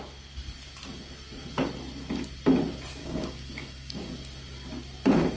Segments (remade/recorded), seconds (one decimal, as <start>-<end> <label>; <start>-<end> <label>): 0.0-3.0 recorded; 3.0-4.1 remade; 4.1-5.4 recorded